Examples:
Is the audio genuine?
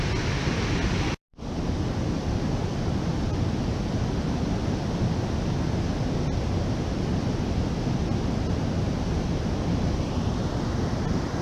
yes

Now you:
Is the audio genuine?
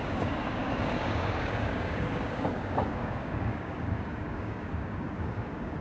no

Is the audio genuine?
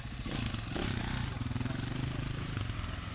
yes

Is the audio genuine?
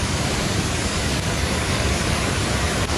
no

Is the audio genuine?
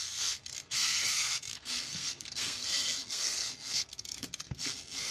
no